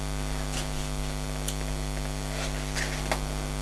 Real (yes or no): yes